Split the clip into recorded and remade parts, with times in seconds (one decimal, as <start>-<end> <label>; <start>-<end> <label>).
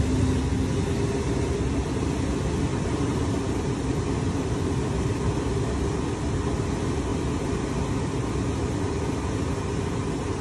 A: 0.0-2.7 recorded; 2.7-6.2 remade; 6.2-10.4 recorded